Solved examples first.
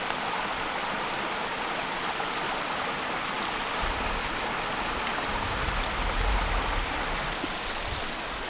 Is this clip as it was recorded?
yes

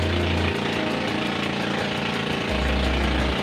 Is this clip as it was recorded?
yes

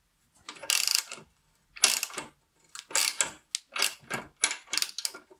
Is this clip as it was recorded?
yes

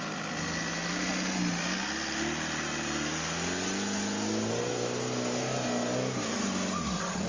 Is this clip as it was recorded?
yes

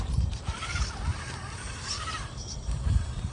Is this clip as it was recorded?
no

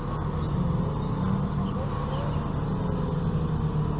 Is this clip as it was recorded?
yes